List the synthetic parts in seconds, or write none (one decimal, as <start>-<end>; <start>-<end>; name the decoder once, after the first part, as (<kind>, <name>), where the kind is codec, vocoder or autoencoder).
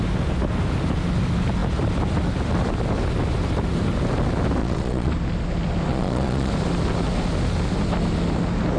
4.6-5.1 (vocoder, Vocos); 5.9-6.5